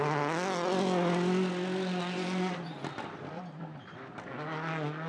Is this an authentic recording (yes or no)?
yes